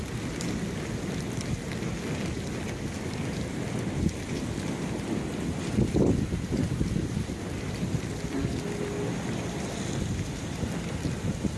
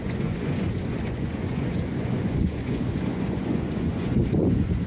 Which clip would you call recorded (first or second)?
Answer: first